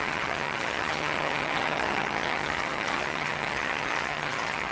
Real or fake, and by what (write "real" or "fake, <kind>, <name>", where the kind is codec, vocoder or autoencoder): fake, vocoder, HiFi-GAN